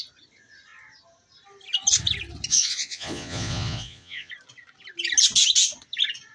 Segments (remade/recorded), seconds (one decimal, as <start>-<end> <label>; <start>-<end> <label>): 0.0-2.5 recorded; 2.5-4.3 remade; 4.3-6.3 recorded